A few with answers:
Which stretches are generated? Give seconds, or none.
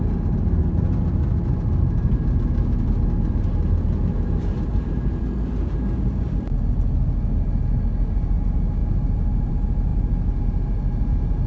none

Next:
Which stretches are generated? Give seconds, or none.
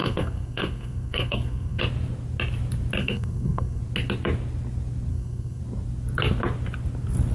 0.0-1.8 (codec, SNAC); 3.0-3.8; 5.1-5.6